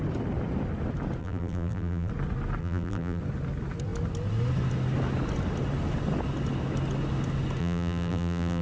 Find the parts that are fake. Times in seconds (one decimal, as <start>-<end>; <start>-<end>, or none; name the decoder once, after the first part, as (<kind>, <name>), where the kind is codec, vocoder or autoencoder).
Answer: 1.2-2.1 (vocoder, BigVGAN v2); 2.6-3.2; 7.6-8.6

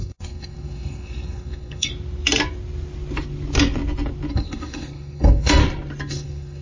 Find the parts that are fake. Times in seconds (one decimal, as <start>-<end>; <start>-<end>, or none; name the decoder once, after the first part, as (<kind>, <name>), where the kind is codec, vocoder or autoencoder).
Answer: 0.0-1.9 (codec, SNAC); 4.3-5.6; 6.1-6.6

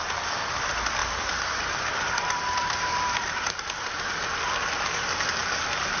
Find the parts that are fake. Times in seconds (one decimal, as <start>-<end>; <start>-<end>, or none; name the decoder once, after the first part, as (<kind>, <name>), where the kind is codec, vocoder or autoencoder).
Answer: 1.0-4.0 (vocoder, BigVGAN v2); 5.4-6.0

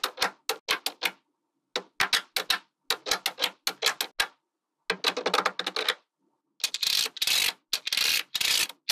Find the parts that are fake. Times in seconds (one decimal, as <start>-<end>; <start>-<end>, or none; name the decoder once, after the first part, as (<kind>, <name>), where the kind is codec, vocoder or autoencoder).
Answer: none

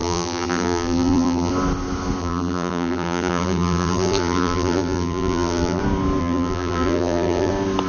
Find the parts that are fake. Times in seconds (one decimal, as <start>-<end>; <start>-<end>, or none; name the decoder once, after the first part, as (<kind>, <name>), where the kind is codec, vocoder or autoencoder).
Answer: 0.0-1.5 (vocoder, BigVGAN v2); 2.2-5.8; 6.2-7.5

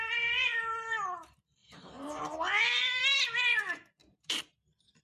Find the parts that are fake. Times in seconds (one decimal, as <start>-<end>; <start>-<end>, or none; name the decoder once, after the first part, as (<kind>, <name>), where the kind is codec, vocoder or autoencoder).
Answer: 1.6-2.2 (vocoder, BigVGAN v2); 4.0-5.0